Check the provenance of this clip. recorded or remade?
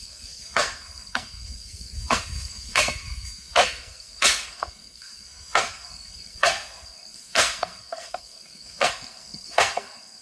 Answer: remade